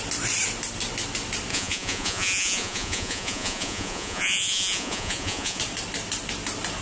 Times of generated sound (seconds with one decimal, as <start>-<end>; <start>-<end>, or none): 1.5-5.6